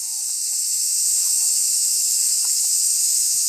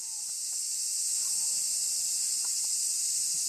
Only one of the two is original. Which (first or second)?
second